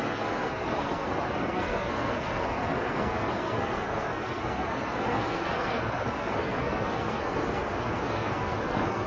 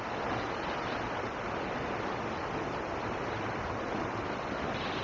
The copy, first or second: first